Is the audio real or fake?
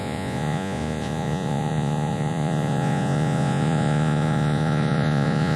fake